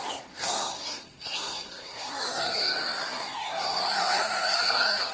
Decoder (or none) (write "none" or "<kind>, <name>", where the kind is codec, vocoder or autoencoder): codec, SNAC